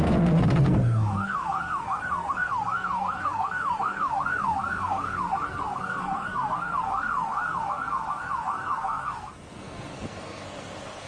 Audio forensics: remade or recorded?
remade